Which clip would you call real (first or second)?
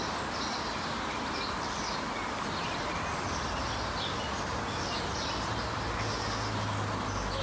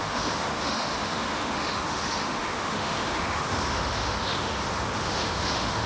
first